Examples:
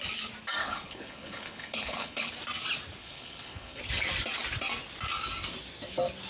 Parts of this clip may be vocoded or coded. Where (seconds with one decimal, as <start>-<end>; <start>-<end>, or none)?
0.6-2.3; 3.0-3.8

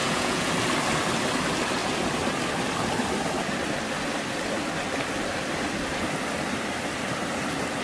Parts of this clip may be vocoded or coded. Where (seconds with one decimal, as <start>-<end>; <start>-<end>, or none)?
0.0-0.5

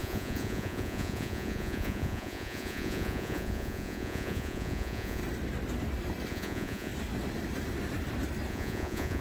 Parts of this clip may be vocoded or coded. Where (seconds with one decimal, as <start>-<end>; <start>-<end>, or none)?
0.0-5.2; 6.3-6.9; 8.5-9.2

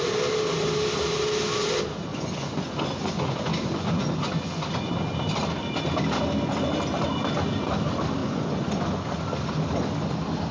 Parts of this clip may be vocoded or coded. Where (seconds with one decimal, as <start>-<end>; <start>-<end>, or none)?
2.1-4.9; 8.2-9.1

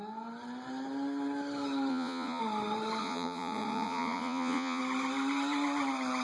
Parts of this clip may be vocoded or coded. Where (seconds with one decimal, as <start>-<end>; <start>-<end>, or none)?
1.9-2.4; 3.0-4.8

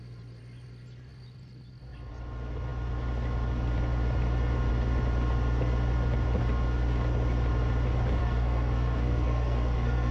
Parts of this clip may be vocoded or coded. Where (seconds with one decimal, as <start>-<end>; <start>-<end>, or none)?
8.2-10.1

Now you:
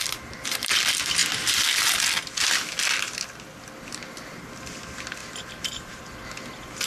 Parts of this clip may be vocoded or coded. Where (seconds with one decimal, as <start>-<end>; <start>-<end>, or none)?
5.2-6.0